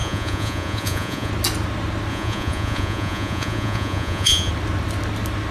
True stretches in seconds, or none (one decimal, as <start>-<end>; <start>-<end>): 1.3-2.1; 4.5-5.5

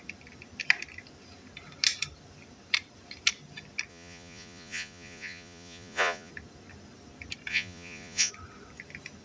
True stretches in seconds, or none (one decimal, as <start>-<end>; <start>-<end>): 0.0-3.9; 6.3-7.5; 8.3-9.2

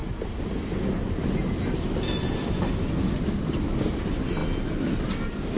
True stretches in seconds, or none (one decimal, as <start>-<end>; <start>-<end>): 0.0-5.6

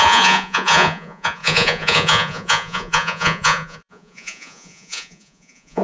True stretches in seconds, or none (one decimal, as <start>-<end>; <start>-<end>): none

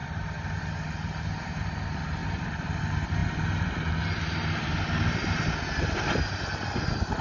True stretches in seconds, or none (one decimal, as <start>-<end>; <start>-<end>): 0.0-7.2